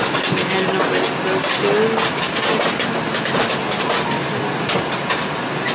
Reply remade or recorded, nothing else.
recorded